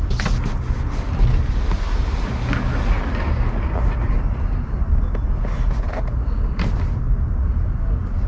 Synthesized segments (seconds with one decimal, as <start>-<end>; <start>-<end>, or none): none